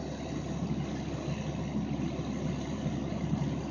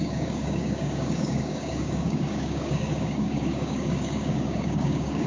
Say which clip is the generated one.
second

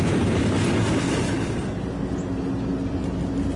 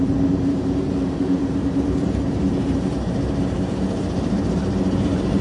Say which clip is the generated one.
second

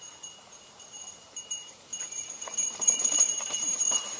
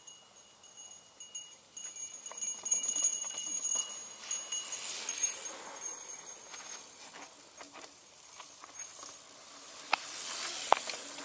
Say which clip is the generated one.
first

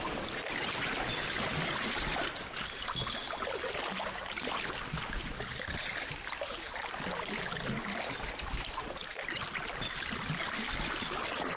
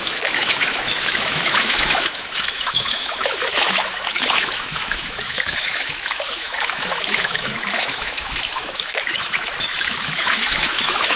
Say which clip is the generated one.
second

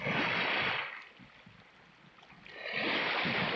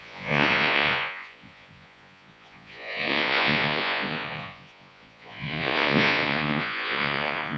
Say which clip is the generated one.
second